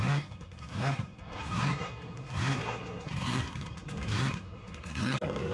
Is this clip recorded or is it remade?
remade